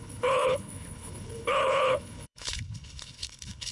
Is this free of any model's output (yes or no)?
no